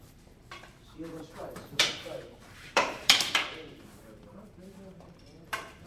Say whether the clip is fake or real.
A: fake